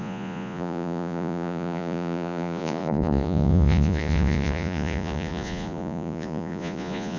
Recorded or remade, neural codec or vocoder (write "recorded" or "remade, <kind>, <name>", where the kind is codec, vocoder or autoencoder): remade, vocoder, Vocos